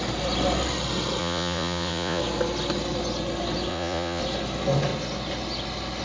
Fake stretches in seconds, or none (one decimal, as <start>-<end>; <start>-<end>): 1.2-2.2; 3.7-4.2